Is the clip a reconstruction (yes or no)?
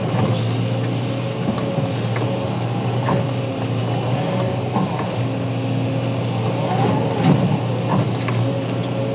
no